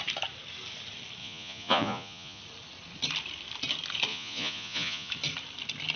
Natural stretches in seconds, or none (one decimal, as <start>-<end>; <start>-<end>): 0.0-1.2; 2.4-4.1; 5.1-6.0